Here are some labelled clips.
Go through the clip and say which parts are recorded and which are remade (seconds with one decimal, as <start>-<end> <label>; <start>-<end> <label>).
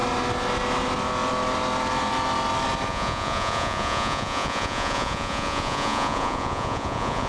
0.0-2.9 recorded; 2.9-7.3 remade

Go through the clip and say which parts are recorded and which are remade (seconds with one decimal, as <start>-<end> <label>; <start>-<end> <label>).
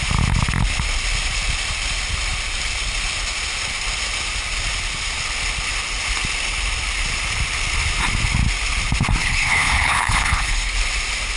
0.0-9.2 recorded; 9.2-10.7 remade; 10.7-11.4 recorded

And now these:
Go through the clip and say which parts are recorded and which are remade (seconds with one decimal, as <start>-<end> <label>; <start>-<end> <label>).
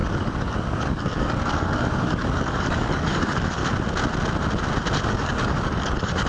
0.0-3.6 remade; 3.6-5.1 recorded; 5.1-6.3 remade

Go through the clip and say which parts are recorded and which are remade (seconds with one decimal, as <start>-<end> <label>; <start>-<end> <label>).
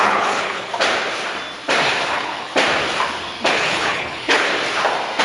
0.0-0.7 remade; 0.7-2.1 recorded; 2.1-2.5 remade; 2.5-3.5 recorded; 3.5-4.5 remade; 4.5-5.2 recorded